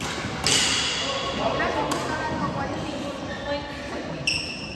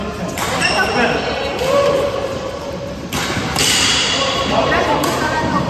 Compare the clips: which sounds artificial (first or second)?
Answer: second